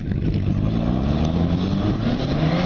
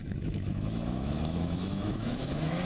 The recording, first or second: first